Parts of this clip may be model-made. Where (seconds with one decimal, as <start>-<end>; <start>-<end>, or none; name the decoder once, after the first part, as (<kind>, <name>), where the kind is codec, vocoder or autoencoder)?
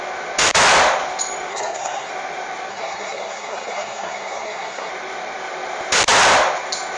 1.5-2.1 (codec, SNAC); 2.7-4.9